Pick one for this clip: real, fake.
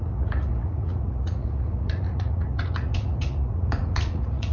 fake